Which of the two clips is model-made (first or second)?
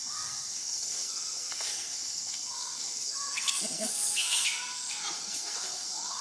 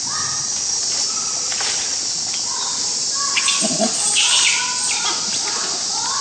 first